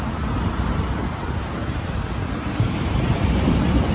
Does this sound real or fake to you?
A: real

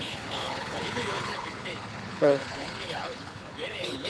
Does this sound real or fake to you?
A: fake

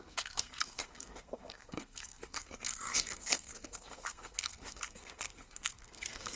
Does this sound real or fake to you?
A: fake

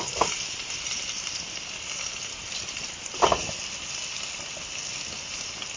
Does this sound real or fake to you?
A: real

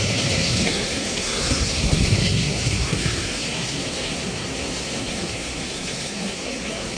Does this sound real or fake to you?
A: fake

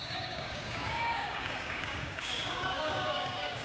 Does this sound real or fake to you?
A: fake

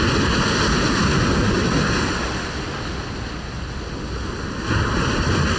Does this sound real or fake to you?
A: real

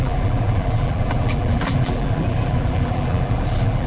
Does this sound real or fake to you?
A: fake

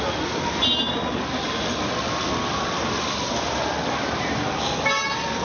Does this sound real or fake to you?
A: real